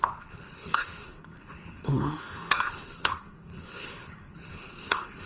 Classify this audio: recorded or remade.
remade